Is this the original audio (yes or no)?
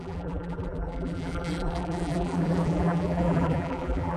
no